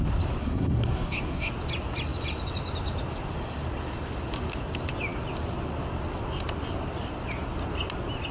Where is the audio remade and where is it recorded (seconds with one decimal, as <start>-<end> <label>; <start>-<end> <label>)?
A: 0.0-0.4 recorded; 0.4-1.5 remade; 1.5-8.3 recorded